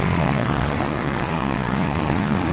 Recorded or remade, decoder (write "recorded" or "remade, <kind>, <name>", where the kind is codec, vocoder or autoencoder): remade, vocoder, Vocos